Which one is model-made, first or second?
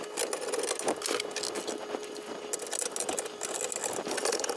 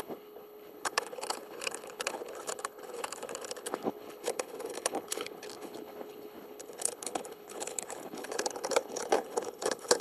second